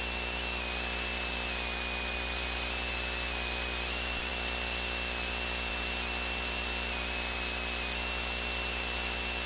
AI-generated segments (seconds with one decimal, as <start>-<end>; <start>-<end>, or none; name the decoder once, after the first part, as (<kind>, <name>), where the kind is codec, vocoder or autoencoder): none